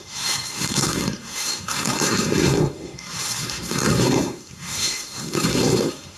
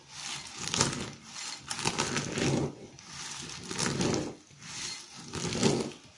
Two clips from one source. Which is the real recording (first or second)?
second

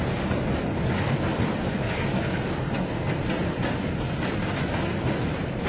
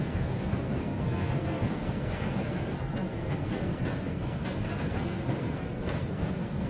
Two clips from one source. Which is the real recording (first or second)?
first